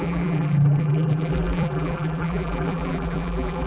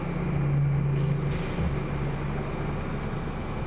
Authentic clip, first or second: second